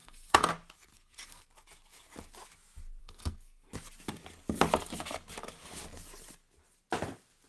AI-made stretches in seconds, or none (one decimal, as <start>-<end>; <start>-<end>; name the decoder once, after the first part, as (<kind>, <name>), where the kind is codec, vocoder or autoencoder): 0.0-0.5 (codec, SNAC); 0.9-1.4; 3.0-3.7

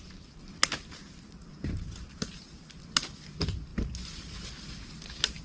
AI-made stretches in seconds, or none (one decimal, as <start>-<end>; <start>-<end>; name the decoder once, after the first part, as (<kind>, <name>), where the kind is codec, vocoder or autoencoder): none

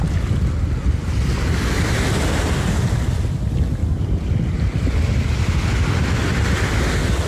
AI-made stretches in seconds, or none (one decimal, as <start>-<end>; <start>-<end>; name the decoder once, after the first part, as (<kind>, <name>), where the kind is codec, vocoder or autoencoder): none